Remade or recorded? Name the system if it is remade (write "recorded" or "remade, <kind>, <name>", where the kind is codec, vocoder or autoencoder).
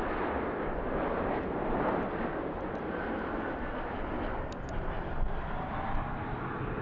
recorded